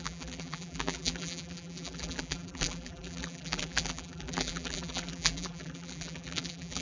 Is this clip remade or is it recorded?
remade